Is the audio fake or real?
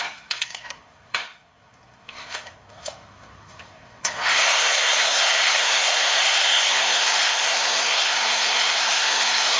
fake